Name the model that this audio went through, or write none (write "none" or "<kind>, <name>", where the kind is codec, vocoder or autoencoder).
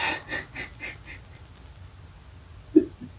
none